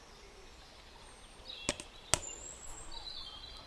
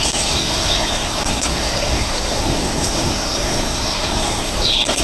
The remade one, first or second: second